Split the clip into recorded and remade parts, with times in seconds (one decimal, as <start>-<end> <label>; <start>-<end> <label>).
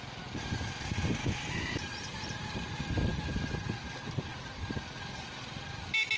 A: 0.0-1.2 recorded; 1.2-1.8 remade; 1.8-6.2 recorded